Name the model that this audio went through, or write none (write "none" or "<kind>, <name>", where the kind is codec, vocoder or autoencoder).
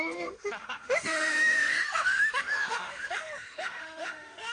autoencoder, DAC-VAE